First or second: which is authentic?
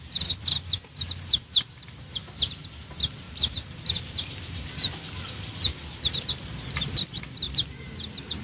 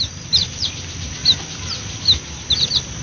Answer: second